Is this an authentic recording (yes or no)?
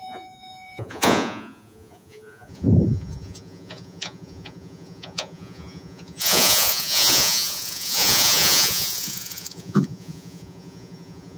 no